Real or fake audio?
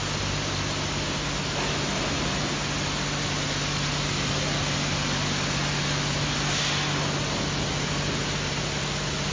real